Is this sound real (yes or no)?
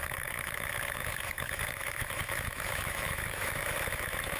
no